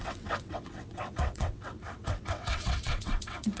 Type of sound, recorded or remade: remade